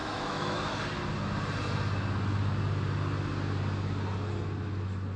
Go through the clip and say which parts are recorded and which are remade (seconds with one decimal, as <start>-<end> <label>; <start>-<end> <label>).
0.0-0.7 remade; 0.7-5.2 recorded